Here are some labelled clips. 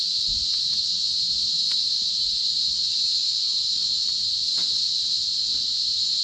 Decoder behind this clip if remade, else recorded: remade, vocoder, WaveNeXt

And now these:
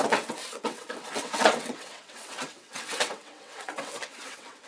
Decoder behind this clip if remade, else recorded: remade, vocoder, WaveNeXt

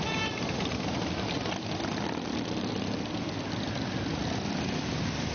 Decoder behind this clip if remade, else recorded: recorded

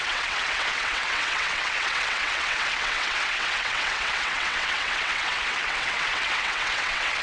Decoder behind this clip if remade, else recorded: remade, vocoder, WaveNeXt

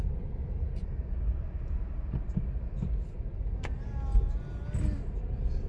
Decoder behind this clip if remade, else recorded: recorded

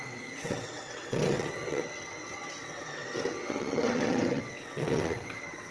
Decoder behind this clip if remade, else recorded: remade, vocoder, WaveNeXt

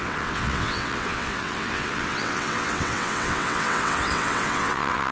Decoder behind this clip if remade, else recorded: remade, vocoder, WaveNeXt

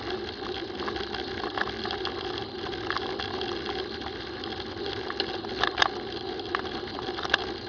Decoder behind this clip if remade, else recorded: recorded